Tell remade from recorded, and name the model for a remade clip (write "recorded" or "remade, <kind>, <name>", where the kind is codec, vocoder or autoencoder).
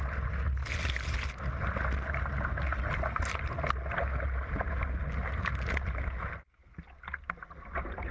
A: recorded